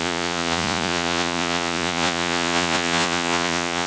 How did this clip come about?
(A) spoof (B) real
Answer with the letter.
A